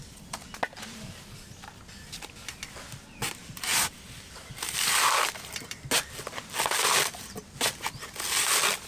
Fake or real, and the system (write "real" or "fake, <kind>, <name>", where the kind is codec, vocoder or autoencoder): real